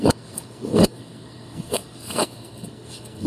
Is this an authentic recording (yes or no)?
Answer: no